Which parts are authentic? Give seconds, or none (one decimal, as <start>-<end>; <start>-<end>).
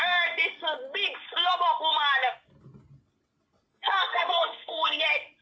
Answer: 0.0-3.7; 5.0-5.4